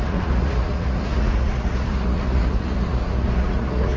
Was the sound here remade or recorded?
remade